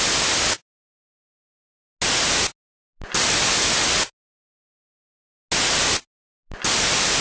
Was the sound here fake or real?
real